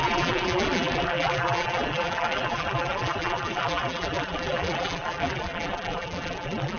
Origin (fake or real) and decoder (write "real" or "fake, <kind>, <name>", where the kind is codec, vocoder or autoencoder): fake, vocoder, BigVGAN v2